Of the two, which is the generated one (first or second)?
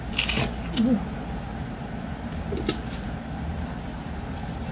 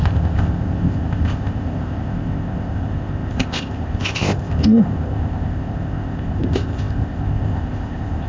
second